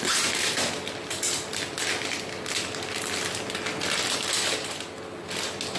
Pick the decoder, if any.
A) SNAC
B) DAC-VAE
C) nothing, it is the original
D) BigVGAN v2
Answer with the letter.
C